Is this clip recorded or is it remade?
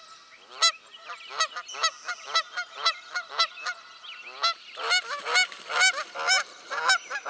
recorded